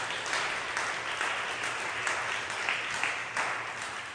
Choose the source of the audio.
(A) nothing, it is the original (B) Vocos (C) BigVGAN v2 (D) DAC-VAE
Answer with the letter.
A